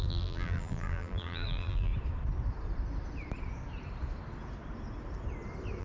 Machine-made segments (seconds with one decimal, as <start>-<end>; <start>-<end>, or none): 0.0-1.9

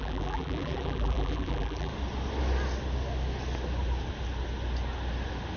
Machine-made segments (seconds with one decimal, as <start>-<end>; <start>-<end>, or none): 0.0-1.9

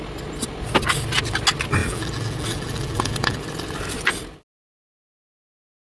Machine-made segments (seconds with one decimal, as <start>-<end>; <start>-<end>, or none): 1.8-3.4